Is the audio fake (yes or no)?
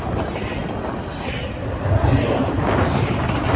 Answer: no